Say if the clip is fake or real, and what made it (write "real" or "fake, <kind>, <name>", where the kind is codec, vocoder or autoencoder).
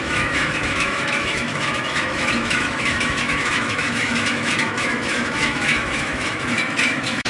fake, autoencoder, DAC-VAE